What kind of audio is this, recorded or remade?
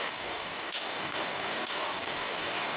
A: remade